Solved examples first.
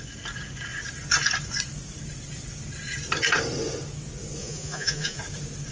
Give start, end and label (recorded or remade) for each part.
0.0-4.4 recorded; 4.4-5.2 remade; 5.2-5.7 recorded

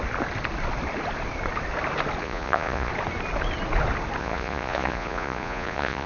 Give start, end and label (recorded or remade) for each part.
0.0-2.2 recorded; 2.2-2.9 remade; 2.9-4.2 recorded; 4.2-6.1 remade

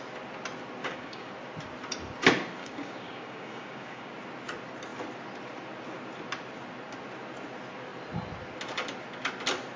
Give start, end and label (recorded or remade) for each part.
0.0-0.8 recorded; 0.8-1.3 remade; 1.3-2.6 recorded; 2.6-4.1 remade; 4.1-9.8 recorded

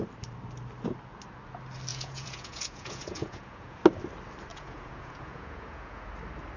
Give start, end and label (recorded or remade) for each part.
0.0-1.9 recorded; 1.9-3.8 remade; 3.8-4.5 recorded; 4.5-6.1 remade; 6.1-6.6 recorded

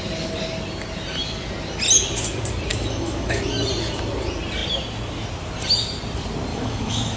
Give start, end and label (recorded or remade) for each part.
0.0-2.7 recorded; 2.7-3.4 remade; 3.4-6.5 recorded; 6.5-7.2 remade